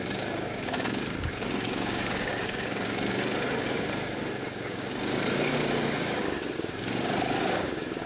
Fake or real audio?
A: fake